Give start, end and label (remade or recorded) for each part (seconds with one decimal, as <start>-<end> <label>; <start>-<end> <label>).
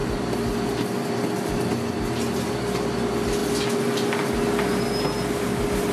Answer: 0.0-5.9 recorded